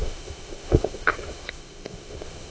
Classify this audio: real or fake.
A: fake